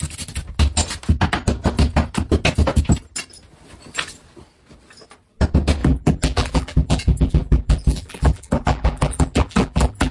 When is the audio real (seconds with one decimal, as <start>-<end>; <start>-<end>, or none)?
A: 0.0-5.8